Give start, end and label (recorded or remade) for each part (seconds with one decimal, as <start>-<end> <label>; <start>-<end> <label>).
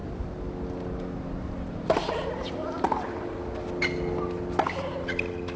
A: 0.0-5.6 recorded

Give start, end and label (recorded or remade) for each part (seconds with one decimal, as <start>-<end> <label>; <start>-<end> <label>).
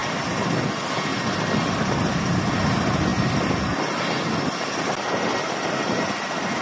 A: 0.0-6.6 recorded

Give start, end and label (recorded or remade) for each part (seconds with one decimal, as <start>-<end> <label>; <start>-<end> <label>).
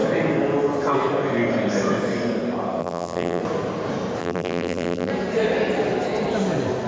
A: 0.0-2.8 recorded; 2.8-3.4 remade; 3.4-4.2 recorded; 4.2-5.1 remade; 5.1-6.9 recorded